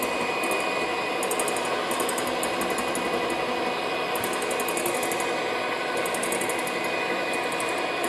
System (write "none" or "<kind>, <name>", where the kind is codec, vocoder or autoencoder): none